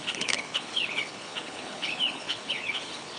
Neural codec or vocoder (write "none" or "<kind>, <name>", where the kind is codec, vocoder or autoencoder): codec, HILCodec